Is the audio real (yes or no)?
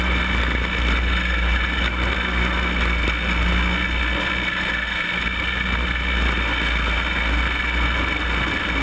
yes